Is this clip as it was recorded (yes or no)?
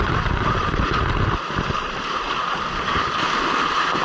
yes